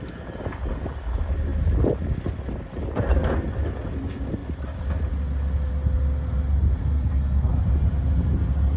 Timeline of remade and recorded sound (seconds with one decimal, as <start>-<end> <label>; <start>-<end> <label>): 0.0-6.8 recorded; 6.8-7.5 remade; 7.5-8.8 recorded